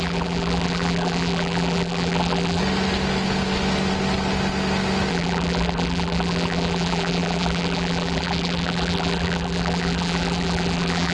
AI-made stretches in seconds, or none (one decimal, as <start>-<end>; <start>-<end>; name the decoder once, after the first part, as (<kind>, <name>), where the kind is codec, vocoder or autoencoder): 0.0-2.6 (vocoder, BigVGAN v2); 5.1-11.1